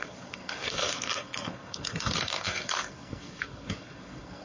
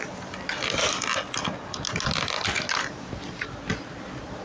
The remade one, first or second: first